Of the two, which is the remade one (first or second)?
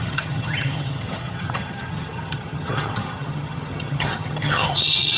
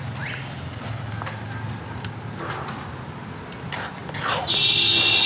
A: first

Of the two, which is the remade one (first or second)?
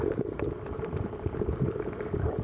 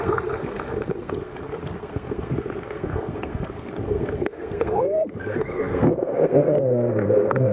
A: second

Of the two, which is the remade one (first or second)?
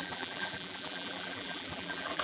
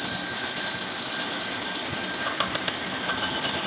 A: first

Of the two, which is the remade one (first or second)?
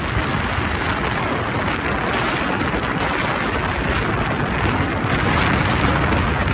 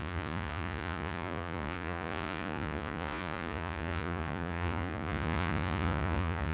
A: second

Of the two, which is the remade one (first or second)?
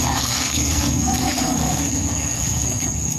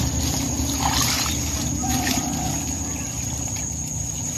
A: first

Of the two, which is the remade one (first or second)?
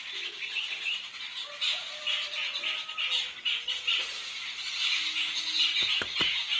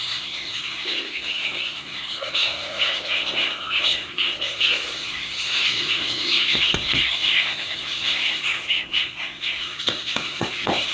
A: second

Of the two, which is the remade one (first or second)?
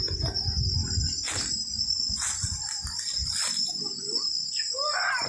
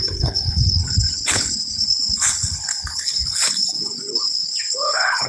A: second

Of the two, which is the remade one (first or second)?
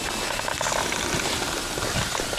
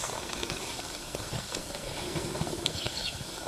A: second